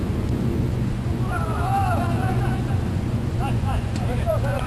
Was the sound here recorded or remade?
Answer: remade